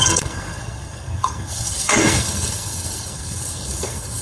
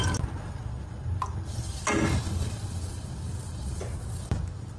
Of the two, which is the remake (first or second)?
first